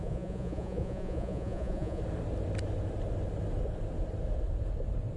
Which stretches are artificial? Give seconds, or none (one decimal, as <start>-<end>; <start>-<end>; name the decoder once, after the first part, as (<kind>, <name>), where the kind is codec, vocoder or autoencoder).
0.0-2.0 (vocoder, Vocos)